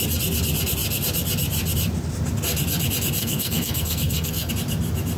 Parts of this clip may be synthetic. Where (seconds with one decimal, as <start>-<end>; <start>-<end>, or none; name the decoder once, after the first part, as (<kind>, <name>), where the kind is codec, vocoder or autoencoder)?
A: 3.2-4.5 (codec, SNAC)